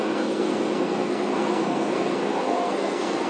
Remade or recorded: remade